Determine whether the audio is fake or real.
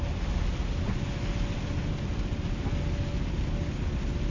real